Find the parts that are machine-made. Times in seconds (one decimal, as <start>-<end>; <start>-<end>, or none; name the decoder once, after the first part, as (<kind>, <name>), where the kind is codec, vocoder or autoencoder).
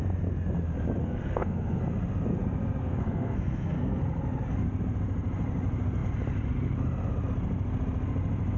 1.0-1.8 (codec, SNAC); 2.8-4.0